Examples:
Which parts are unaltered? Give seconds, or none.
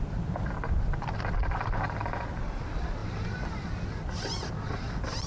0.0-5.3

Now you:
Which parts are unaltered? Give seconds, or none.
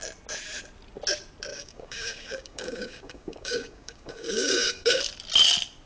0.0-1.5; 5.0-5.9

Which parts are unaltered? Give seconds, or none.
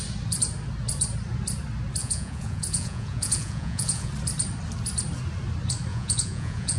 0.0-2.0; 4.1-5.9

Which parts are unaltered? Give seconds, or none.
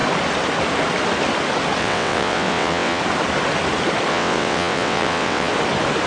0.0-1.8; 3.0-4.1; 5.5-6.1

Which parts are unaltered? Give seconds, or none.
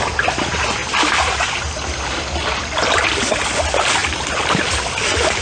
0.0-5.4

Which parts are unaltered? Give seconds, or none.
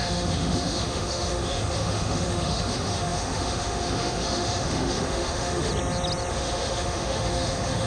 5.7-6.3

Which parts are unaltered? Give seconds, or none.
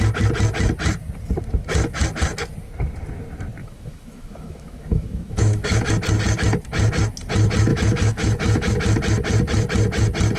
0.0-3.6; 5.9-7.7; 8.7-10.4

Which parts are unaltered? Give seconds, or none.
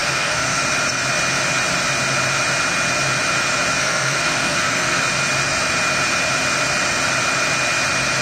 0.6-3.8; 5.0-8.2